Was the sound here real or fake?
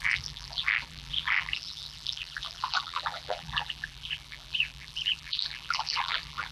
fake